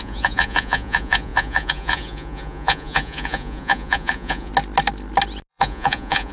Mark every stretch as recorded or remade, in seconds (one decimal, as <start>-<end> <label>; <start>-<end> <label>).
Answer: 0.0-4.5 remade; 4.5-5.5 recorded; 5.5-6.3 remade